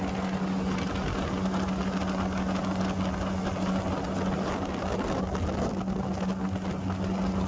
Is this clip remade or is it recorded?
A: recorded